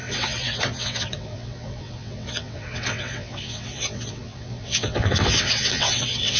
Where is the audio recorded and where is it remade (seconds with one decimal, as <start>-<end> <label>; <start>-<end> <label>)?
0.0-6.4 remade